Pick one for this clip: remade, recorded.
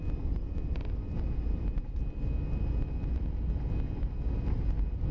recorded